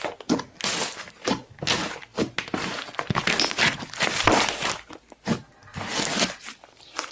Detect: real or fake real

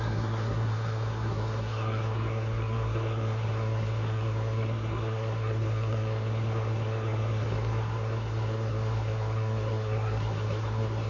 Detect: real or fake fake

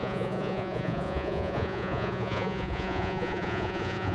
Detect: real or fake fake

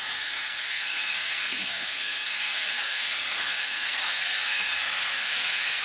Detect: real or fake fake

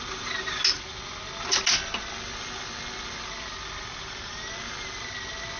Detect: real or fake real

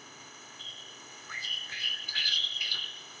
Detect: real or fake fake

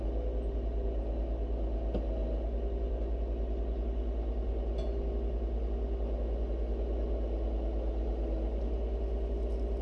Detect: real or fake real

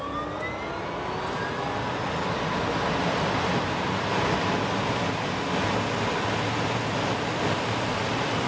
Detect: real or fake real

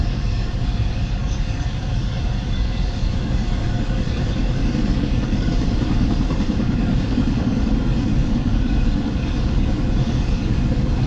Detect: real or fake fake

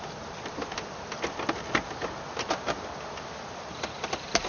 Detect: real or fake real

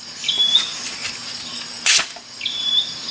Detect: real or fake real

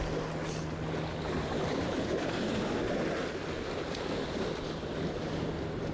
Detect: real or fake real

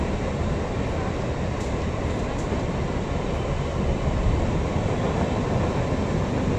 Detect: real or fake real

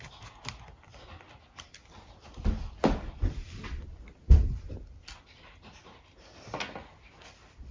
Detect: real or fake real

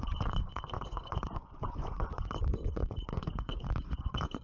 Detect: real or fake fake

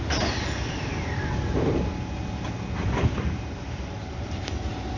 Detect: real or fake real